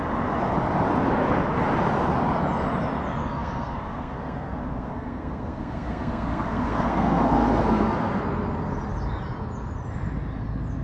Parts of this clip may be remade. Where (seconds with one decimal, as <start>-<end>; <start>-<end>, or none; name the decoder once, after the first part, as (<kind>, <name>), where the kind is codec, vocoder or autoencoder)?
3.2-8.2 (codec, SNAC)